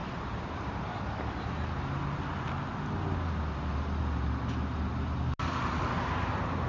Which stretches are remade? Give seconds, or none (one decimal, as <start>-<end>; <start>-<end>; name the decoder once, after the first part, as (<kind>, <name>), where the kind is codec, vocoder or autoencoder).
none